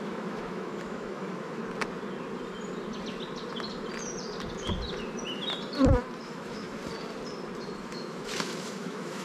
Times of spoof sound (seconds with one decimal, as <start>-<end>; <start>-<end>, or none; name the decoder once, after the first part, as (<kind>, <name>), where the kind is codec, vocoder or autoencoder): 0.0-1.6 (autoencoder, DAC-VAE); 6.2-6.8; 7.8-9.2